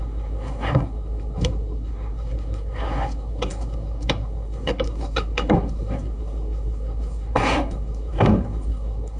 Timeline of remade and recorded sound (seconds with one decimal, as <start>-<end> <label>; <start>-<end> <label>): 0.0-9.2 remade